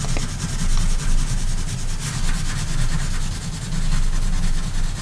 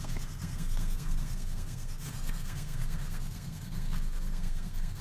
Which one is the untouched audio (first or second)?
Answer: first